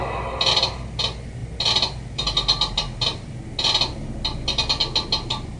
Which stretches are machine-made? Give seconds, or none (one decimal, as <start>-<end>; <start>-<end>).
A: none